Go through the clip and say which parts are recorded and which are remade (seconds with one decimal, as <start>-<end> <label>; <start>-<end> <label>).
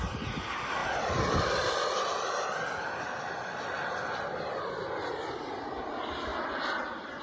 0.0-6.3 remade; 6.3-7.2 recorded